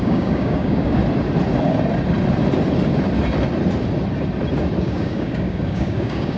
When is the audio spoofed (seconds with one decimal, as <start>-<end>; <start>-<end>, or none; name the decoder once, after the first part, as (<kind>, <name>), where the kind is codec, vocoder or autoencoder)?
0.0-1.0 (codec, DAC); 4.8-6.4